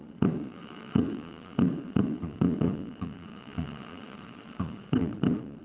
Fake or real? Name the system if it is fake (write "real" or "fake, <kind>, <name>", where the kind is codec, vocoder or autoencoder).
fake, vocoder, Vocos